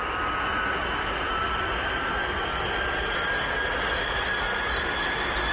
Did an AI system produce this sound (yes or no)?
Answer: no